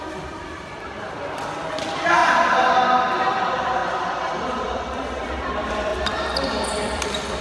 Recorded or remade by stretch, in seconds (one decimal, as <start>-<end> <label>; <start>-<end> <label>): 0.0-2.2 remade; 2.2-3.3 recorded; 3.3-5.9 remade; 5.9-6.6 recorded; 6.6-7.4 remade